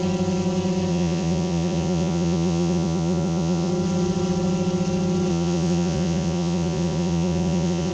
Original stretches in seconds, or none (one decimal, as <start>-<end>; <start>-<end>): 0.0-0.9; 3.7-5.3